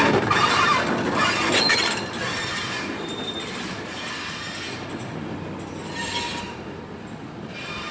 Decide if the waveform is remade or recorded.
recorded